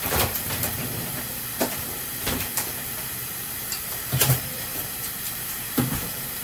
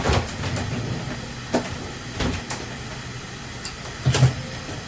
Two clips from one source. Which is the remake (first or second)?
first